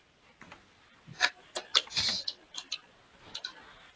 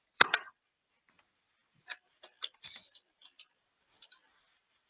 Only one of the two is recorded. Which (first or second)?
first